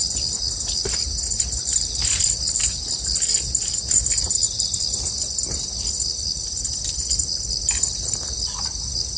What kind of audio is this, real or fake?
real